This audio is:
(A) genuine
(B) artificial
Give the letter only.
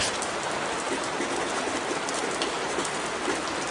A